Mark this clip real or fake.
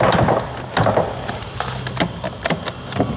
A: real